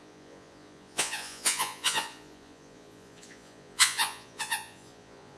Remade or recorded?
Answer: remade